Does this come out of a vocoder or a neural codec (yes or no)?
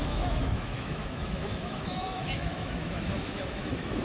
yes